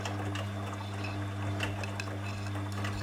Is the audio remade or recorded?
recorded